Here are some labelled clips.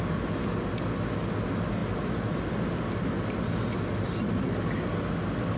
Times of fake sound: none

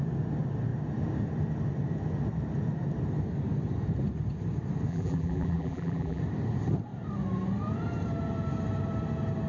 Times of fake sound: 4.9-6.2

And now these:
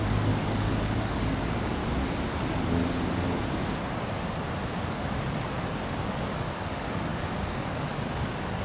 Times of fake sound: 0.0-1.8; 2.4-2.8; 4.7-8.6

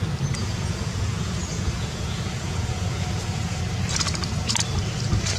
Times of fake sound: 0.4-3.6

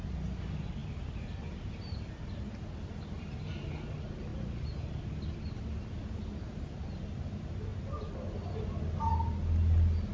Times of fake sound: none

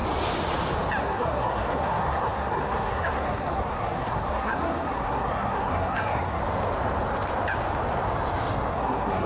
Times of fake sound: 1.0-6.4; 8.7-9.3

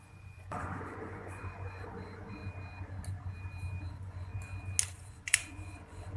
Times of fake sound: 0.0-2.4; 3.9-4.3; 5.1-6.2

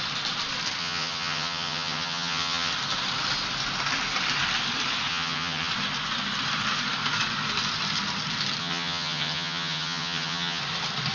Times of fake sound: 0.8-2.7; 5.1-5.7; 8.6-10.6